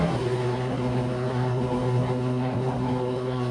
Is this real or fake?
fake